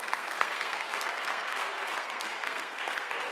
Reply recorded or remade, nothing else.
remade